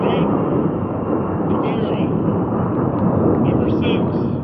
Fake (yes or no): yes